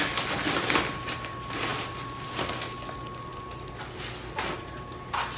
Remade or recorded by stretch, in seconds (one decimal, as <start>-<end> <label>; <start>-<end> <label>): 0.0-5.4 recorded